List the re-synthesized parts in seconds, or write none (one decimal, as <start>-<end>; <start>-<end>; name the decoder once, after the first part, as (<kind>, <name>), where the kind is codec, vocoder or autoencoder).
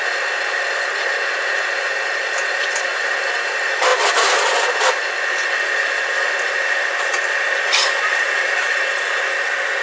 none